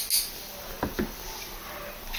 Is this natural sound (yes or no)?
yes